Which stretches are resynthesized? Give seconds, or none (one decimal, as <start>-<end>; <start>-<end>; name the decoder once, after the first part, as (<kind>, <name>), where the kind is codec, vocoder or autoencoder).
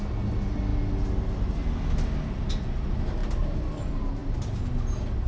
none